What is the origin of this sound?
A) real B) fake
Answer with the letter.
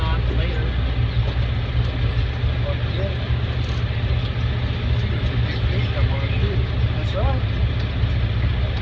A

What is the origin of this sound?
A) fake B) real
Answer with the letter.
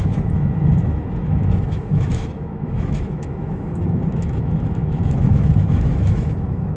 A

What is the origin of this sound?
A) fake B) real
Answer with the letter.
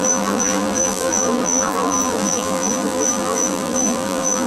A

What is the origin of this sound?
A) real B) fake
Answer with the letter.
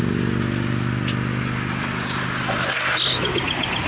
A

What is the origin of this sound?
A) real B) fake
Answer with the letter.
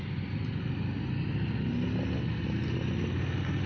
A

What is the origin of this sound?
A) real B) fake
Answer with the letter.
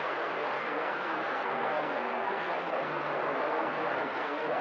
B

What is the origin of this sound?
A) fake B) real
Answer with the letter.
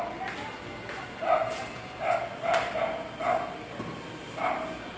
B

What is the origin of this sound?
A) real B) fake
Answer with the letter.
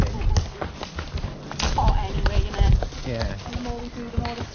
A